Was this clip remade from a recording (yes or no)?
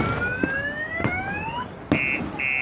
no